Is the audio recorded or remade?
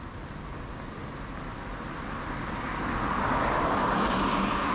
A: recorded